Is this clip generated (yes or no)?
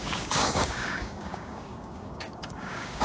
yes